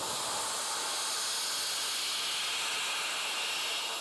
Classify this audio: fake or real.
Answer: real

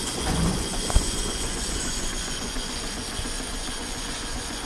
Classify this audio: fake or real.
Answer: fake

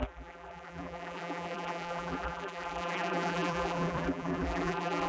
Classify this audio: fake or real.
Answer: fake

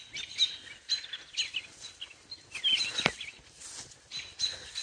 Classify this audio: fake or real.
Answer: real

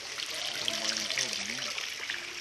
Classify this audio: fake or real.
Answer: real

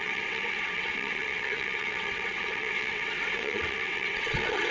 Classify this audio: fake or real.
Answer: fake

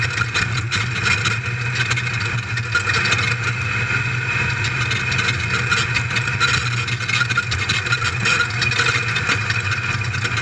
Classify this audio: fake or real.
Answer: real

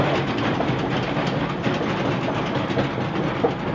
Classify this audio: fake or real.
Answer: real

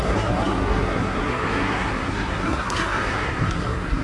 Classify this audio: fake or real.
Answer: fake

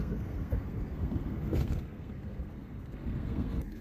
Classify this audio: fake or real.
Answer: fake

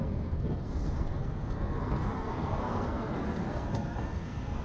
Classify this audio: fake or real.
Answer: fake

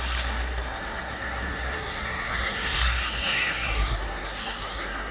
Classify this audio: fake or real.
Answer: fake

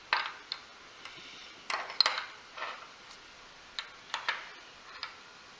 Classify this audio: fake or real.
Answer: real